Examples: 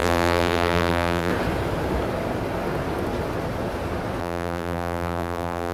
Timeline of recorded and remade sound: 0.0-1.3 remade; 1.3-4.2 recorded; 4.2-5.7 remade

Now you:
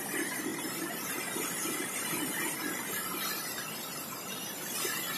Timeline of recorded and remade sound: 0.0-0.5 recorded; 0.5-1.1 remade; 1.1-5.2 recorded

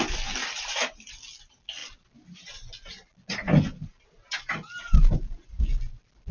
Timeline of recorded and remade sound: 0.0-0.4 recorded; 0.4-1.2 remade; 1.2-6.3 recorded